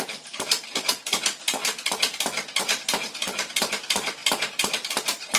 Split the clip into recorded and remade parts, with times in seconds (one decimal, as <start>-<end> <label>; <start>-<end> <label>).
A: 0.0-1.6 remade; 1.6-2.6 recorded; 2.6-5.4 remade